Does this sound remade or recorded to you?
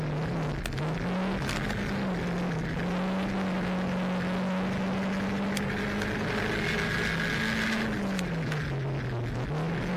recorded